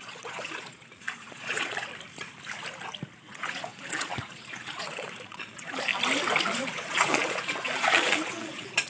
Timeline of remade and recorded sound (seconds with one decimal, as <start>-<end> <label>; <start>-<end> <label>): 0.0-1.9 remade; 1.9-3.3 recorded; 3.3-5.9 remade; 5.9-6.4 recorded; 6.4-8.9 remade